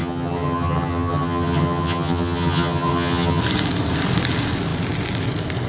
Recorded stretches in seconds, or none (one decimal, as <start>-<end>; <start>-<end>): 3.4-5.7